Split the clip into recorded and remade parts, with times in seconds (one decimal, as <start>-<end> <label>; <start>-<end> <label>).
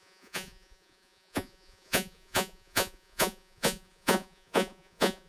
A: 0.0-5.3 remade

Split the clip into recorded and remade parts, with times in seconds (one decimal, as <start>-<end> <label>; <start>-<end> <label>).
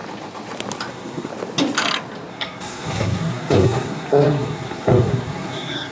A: 0.0-0.9 recorded; 0.9-1.3 remade; 1.3-2.3 recorded; 2.3-5.9 remade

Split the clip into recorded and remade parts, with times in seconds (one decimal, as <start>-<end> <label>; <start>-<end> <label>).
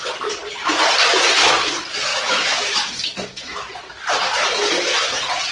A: 0.0-2.1 recorded; 2.1-3.7 remade; 3.7-5.5 recorded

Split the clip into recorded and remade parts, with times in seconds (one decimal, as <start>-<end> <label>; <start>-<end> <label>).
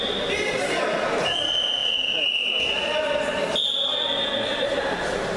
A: 0.0-5.4 recorded